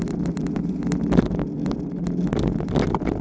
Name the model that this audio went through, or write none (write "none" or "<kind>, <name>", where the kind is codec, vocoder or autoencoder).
none